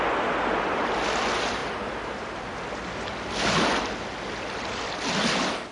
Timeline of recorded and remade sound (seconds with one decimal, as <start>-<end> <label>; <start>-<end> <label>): 0.0-5.7 recorded